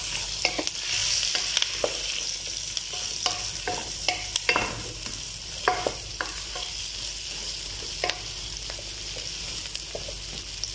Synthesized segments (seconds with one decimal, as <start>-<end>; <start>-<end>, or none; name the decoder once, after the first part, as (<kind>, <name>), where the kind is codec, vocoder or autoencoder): 3.8-4.7 (vocoder, BigVGAN v2); 5.7-6.8